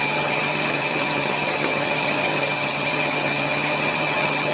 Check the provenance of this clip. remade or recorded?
remade